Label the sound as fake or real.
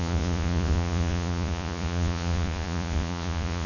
fake